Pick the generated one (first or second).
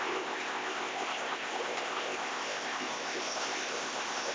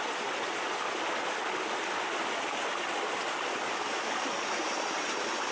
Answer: first